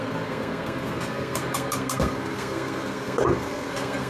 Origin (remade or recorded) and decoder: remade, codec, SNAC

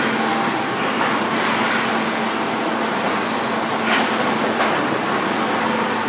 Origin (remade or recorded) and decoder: recorded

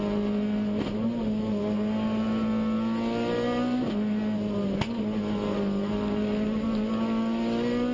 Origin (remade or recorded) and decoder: recorded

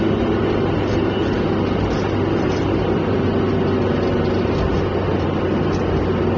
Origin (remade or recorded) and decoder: recorded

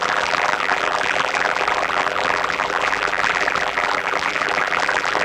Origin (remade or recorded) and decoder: remade, vocoder, BigVGAN v2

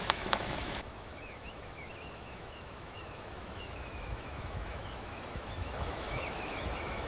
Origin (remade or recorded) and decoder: remade, autoencoder, DAC-VAE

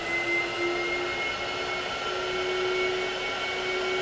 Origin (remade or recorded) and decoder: recorded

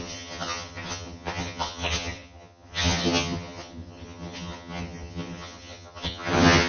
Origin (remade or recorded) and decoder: remade, vocoder, HiFi-GAN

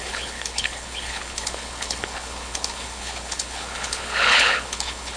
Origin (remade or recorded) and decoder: remade, codec, HILCodec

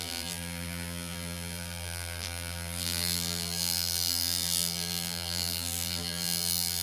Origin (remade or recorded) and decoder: remade, vocoder, BigVGAN v2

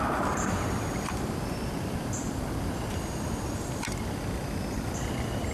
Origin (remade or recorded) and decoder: recorded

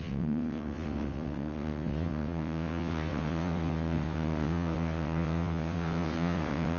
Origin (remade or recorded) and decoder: remade, vocoder, WaveNeXt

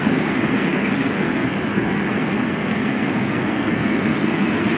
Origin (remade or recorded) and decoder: remade, codec, SNAC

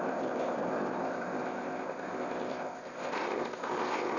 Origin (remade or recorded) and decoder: remade, codec, ZipCodec